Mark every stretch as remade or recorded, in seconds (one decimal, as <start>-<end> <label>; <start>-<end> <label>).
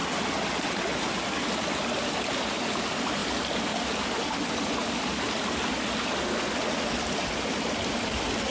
0.0-8.5 recorded